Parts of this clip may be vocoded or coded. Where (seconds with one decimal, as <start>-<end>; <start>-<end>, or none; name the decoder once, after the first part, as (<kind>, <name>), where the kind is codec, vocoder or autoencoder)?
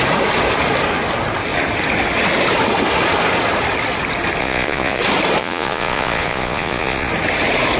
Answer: 4.4-5.0 (vocoder, Vocos); 5.4-7.1